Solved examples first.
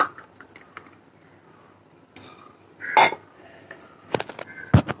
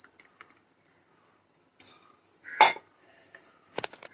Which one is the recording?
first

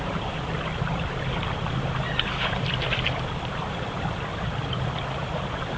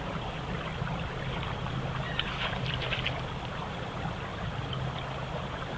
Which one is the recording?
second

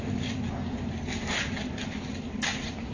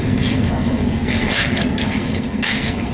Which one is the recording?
first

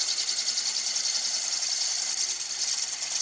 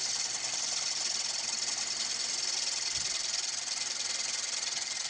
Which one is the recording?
first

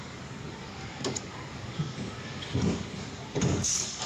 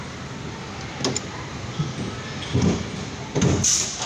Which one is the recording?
second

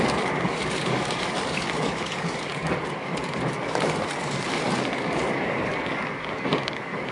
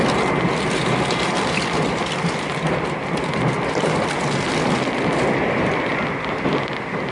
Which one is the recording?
second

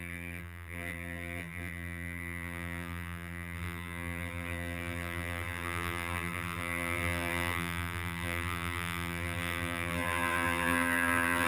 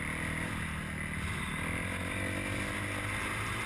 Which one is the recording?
second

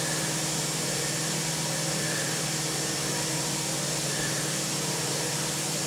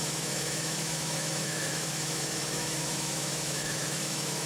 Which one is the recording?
first